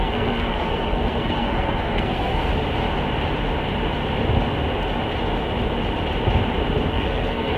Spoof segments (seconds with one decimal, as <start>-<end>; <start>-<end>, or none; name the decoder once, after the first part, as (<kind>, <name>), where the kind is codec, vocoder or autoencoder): 0.0-2.5 (codec, SNAC); 6.9-7.6